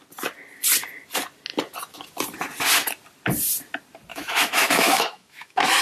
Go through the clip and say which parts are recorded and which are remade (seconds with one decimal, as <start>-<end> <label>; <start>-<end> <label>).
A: 0.0-4.1 recorded; 4.1-5.8 remade